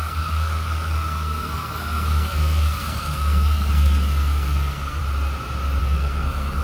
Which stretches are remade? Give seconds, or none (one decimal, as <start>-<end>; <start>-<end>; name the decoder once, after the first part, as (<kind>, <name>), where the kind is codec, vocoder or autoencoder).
0.0-5.0 (codec, SNAC); 5.8-6.6